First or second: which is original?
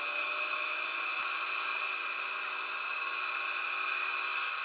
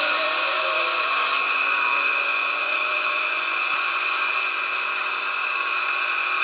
first